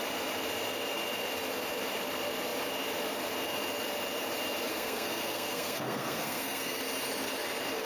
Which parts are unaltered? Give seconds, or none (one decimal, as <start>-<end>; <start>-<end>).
0.0-4.7; 6.8-7.8